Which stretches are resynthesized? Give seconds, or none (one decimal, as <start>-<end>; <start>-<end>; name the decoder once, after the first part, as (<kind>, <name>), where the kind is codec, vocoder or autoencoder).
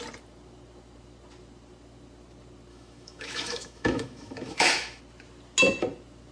2.7-5.0 (autoencoder, DAC-VAE)